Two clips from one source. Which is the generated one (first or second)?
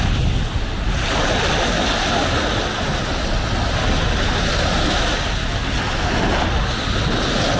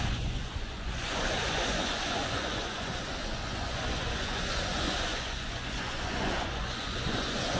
second